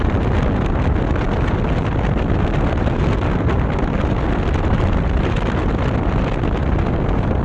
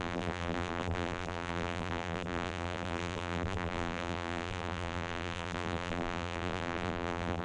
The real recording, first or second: first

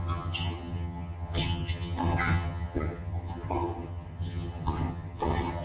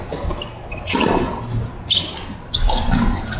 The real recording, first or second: second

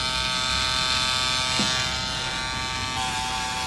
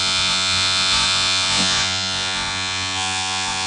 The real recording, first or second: first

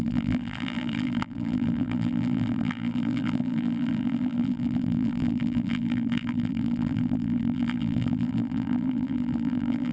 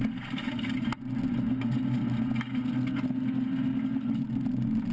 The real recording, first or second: second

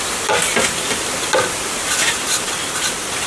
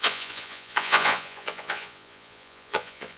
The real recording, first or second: first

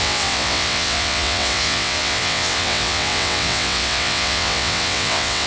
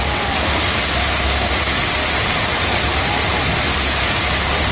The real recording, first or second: second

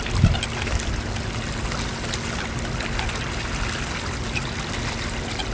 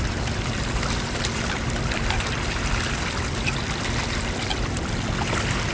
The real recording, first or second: first